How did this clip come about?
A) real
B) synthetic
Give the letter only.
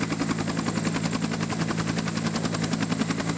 A